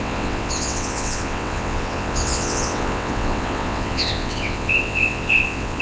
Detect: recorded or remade remade